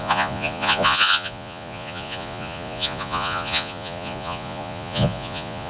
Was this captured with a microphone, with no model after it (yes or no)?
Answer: no